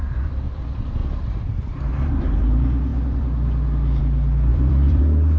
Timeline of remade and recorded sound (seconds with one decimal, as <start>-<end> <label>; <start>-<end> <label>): 0.0-1.0 recorded; 1.0-1.9 remade; 1.9-2.9 recorded; 2.9-4.0 remade; 4.0-4.5 recorded; 4.5-5.0 remade; 5.0-5.4 recorded